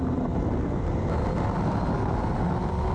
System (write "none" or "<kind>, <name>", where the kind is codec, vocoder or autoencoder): none